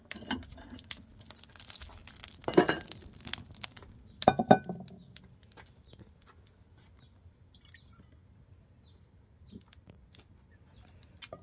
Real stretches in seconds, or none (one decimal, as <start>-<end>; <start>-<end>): 0.0-11.4